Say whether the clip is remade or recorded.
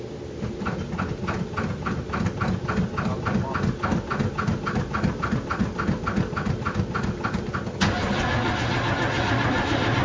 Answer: recorded